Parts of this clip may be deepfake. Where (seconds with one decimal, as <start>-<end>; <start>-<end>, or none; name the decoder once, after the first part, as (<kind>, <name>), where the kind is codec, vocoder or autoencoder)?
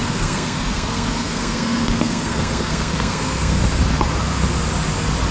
0.0-3.6 (codec, SNAC)